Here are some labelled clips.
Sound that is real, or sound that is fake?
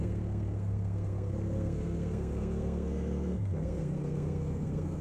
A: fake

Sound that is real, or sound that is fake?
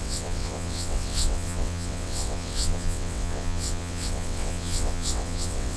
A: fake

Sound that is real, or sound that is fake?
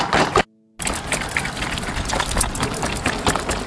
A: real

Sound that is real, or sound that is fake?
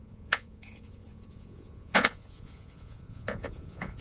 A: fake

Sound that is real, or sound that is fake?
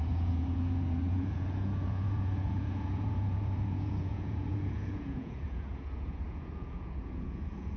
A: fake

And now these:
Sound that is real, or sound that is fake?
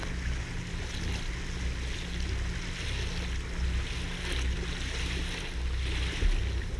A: real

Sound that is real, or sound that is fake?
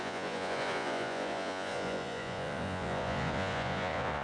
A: fake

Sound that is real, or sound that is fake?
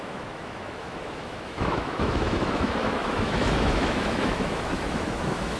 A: fake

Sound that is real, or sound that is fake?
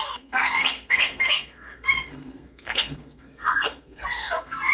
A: fake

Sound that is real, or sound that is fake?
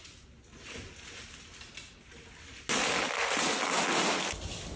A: real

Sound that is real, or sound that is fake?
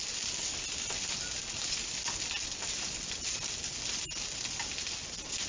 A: real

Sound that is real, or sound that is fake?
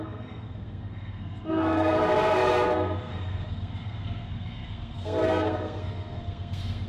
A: fake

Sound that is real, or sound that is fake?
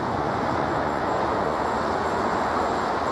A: fake